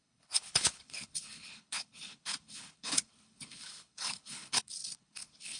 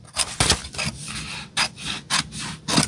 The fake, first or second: first